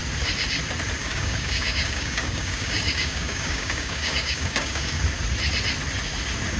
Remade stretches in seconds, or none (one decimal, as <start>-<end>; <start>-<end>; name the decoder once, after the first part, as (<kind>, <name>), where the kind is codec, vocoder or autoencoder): 1.0-5.0 (codec, DAC)